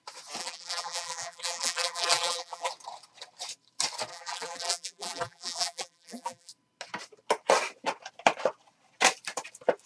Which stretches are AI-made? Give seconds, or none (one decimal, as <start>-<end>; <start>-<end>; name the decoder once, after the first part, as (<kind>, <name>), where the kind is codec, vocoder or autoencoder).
0.4-2.7 (vocoder, BigVGAN v2); 4.1-6.5